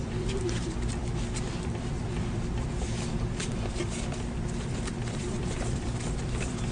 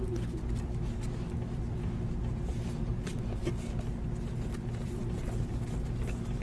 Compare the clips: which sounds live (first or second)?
second